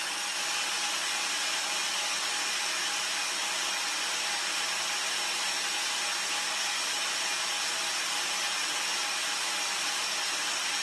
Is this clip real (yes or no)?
yes